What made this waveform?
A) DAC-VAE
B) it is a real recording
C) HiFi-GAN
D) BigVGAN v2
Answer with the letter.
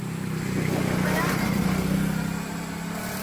B